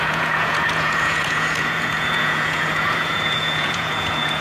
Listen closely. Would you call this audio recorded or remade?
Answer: remade